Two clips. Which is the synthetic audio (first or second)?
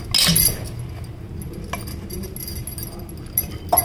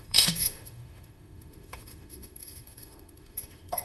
second